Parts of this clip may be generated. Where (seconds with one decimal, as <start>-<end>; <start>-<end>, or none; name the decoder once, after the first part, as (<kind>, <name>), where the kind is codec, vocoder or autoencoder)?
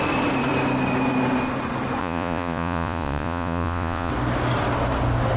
2.0-4.1 (vocoder, Vocos)